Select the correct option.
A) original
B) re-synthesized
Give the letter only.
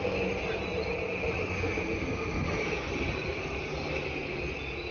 A